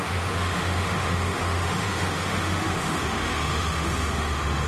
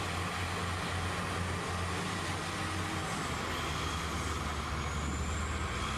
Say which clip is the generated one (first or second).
first